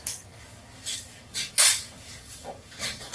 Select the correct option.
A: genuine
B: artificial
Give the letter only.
B